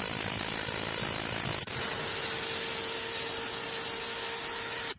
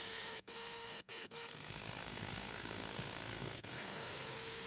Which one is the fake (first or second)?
second